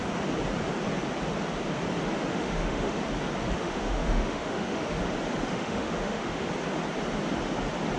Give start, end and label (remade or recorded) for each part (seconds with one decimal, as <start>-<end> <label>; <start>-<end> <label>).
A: 0.0-2.3 recorded; 2.3-3.0 remade; 3.0-3.6 recorded; 3.6-5.0 remade; 5.0-5.5 recorded; 5.5-6.5 remade; 6.5-8.0 recorded